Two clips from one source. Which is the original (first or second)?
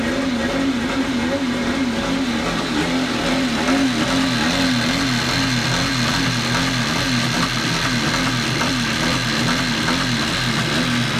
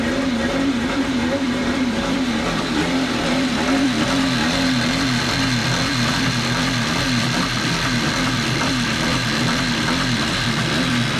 first